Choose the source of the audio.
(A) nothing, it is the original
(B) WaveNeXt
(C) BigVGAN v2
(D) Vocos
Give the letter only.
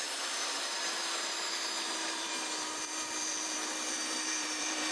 C